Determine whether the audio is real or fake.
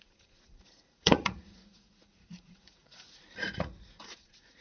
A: fake